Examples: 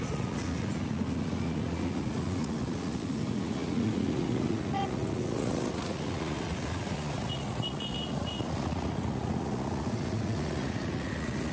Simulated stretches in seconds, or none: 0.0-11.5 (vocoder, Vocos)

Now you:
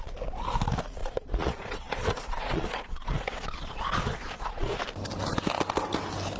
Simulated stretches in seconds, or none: 1.0-4.8 (vocoder, Vocos)

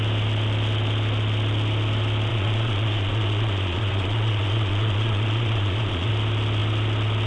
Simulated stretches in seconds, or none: 2.3-6.1 (vocoder, Vocos)

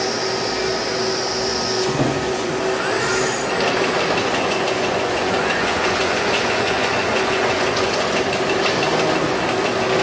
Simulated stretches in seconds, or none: 1.5-2.5 (vocoder, Vocos); 4.2-8.2

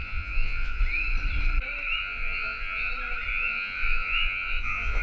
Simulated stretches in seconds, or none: 0.0-0.8 (vocoder, Vocos); 2.0-2.9; 3.3-5.0